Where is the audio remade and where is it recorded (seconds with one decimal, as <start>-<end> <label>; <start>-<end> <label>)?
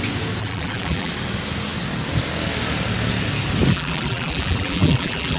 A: 0.0-0.4 recorded; 0.4-1.1 remade; 1.1-3.7 recorded; 3.7-5.4 remade